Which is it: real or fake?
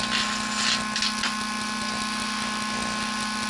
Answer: real